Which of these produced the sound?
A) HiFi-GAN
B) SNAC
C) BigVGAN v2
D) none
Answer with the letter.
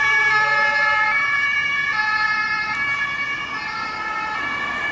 D